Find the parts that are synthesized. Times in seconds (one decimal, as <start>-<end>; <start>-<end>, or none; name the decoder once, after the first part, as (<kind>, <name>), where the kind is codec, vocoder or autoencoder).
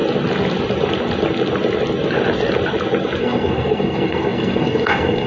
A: 3.2-5.3 (codec, SNAC)